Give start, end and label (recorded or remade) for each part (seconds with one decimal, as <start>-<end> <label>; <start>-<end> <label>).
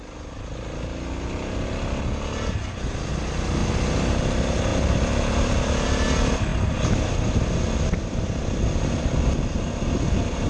0.0-10.5 recorded